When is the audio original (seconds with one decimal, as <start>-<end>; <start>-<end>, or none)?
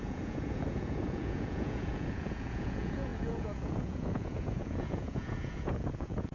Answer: none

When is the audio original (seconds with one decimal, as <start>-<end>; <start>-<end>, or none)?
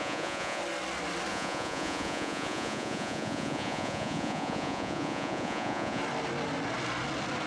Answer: 0.6-1.3; 6.0-7.5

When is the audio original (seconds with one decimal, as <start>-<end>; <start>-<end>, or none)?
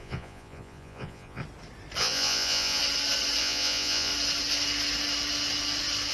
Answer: 1.4-2.0; 2.8-3.4; 4.1-6.1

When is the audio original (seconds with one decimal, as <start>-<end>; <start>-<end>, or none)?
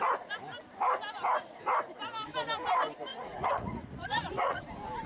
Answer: 0.0-3.1; 4.6-5.1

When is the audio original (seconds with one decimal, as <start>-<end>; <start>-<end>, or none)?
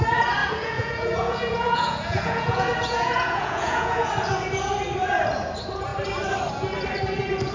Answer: 0.0-0.4; 4.1-7.5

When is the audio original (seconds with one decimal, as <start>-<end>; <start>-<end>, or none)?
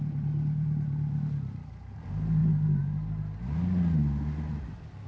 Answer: 0.0-5.1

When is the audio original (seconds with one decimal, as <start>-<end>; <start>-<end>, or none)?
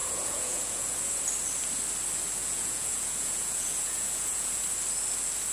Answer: 1.2-2.4; 4.6-5.5